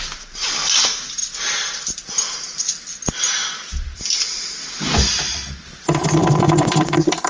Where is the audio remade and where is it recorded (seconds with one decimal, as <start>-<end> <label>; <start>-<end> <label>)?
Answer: 0.0-1.2 recorded; 1.2-4.4 remade; 4.4-6.2 recorded; 6.2-7.3 remade